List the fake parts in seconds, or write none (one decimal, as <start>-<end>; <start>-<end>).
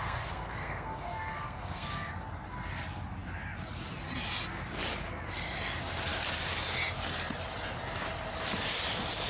0.0-2.1